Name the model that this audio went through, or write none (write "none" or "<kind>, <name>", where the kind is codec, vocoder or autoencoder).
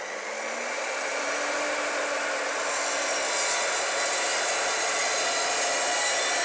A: none